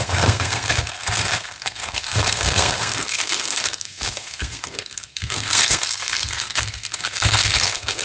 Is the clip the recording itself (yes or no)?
no